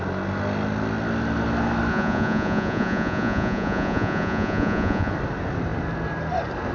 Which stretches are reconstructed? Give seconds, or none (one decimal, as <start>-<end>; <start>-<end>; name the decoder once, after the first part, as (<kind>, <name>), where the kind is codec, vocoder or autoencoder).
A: 1.9-5.1 (vocoder, Vocos)